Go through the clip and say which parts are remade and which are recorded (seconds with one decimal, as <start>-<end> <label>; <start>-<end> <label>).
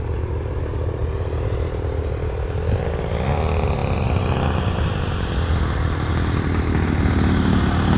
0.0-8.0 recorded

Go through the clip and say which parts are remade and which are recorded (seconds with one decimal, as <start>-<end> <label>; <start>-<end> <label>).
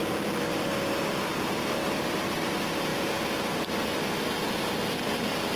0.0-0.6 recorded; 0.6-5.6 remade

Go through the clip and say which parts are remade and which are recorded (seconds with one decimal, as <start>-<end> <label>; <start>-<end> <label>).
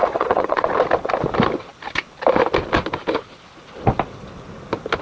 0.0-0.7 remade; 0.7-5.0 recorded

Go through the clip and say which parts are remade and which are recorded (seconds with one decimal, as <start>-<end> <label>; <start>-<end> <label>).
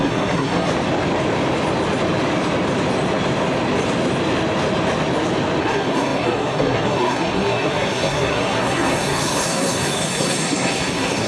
0.0-0.7 remade; 0.7-5.6 recorded; 5.6-11.3 remade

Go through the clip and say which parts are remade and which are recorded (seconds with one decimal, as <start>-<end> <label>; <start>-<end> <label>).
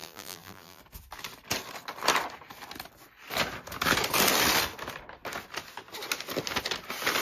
0.0-0.8 remade; 0.8-7.2 recorded